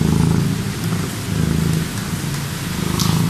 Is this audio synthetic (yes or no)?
no